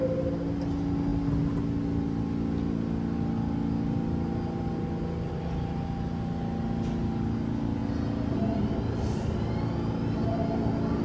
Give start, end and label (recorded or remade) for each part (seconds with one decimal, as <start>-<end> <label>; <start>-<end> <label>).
0.0-11.0 recorded